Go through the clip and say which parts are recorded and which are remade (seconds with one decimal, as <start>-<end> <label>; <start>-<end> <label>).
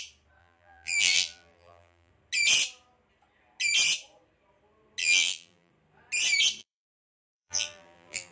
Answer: 0.0-0.4 recorded; 0.4-2.1 remade; 2.1-5.0 recorded; 5.0-5.7 remade; 5.7-6.6 recorded; 6.6-8.3 remade